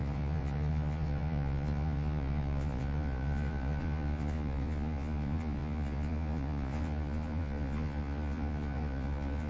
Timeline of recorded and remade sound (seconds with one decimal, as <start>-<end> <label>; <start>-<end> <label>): 0.0-9.5 remade